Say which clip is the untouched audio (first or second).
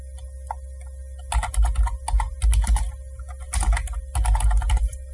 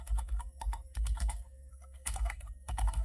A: first